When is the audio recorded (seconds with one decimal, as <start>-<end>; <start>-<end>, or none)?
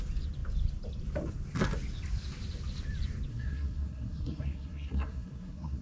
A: 0.0-3.3